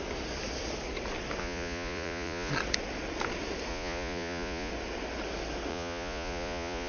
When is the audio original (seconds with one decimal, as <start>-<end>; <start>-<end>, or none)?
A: 0.0-1.4; 2.5-3.7; 4.7-5.7